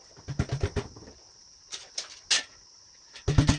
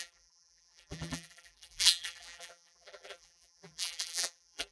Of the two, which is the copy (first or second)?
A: second